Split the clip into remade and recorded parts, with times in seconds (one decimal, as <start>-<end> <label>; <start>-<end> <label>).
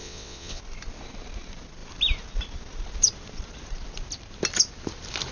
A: 0.0-0.6 remade; 0.6-5.3 recorded